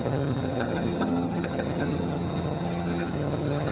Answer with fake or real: fake